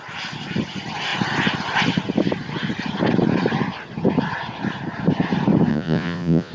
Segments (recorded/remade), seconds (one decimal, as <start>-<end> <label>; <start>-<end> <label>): 0.0-5.7 recorded; 5.7-6.5 remade